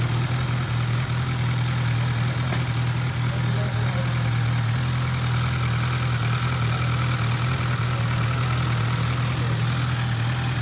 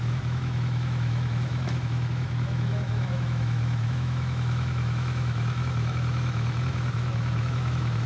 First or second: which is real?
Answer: first